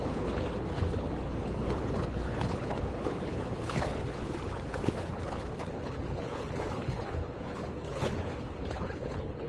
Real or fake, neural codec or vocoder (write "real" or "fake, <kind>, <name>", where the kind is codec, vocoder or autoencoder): fake, codec, HILCodec